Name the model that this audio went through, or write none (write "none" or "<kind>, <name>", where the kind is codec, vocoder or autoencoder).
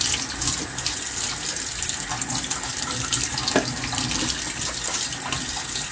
none